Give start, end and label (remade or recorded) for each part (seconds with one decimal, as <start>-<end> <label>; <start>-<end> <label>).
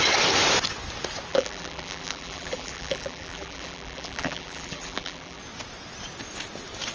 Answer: 0.0-1.3 recorded; 1.3-5.4 remade; 5.4-6.9 recorded